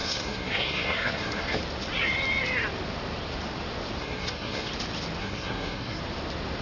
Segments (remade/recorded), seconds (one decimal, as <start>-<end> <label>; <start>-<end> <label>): 0.0-1.6 remade; 1.6-4.0 recorded; 4.0-4.7 remade; 4.7-5.2 recorded; 5.2-6.0 remade; 6.0-6.6 recorded

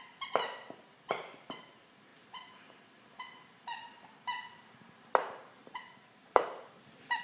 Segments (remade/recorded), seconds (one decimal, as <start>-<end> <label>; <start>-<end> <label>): 0.0-5.2 recorded; 5.2-6.8 remade; 6.8-7.2 recorded

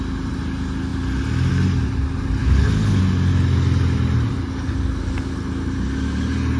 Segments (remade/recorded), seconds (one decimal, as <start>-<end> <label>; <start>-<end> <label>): 0.0-2.4 recorded; 2.4-3.0 remade; 3.0-6.6 recorded